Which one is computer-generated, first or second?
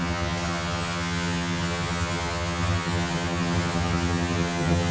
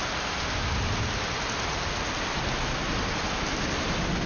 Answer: first